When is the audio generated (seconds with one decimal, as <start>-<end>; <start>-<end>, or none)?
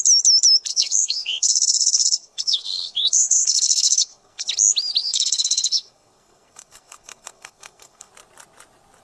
0.7-4.5; 5.0-8.1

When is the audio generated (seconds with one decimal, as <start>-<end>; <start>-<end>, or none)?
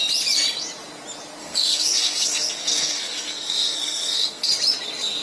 1.4-4.5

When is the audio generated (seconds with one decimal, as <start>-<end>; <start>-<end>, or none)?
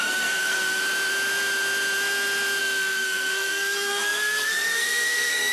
0.0-0.8; 2.6-5.5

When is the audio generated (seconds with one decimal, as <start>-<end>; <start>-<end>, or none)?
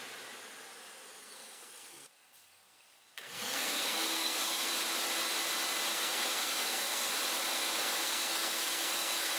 1.2-4.7; 5.9-7.1; 7.5-9.4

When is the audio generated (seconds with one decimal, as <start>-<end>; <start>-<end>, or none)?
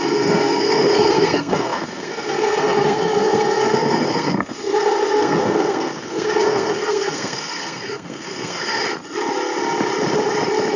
0.0-8.8